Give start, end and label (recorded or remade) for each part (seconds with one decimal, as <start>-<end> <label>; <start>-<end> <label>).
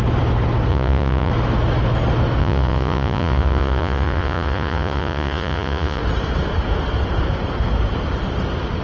0.0-0.7 recorded; 0.7-1.3 remade; 1.3-2.4 recorded; 2.4-6.0 remade; 6.0-8.8 recorded